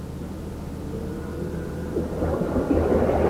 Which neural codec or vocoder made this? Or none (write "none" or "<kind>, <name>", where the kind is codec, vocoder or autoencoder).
none